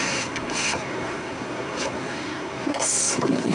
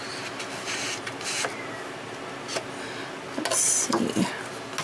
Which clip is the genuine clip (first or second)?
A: second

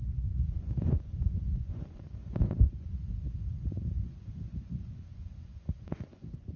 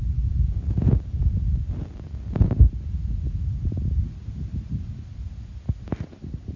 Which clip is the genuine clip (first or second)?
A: second